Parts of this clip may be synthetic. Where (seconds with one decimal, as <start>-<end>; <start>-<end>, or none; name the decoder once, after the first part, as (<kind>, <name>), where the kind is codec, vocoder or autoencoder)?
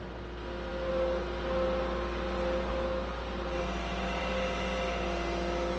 none